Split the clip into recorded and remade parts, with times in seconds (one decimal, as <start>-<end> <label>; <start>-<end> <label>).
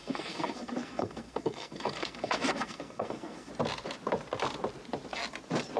0.0-3.5 remade; 3.5-5.8 recorded